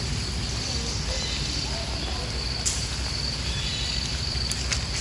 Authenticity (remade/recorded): recorded